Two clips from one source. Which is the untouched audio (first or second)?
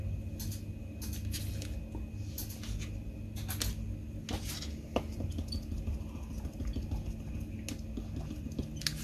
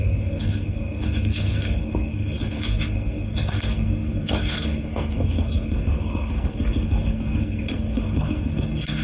first